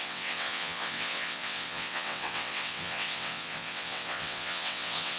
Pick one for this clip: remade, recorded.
remade